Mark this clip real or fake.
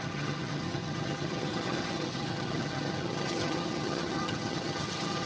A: fake